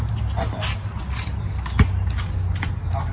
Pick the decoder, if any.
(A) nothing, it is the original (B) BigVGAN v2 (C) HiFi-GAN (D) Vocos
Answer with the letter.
A